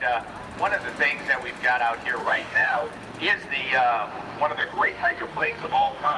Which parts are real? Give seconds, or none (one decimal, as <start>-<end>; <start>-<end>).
0.0-2.2; 2.9-4.6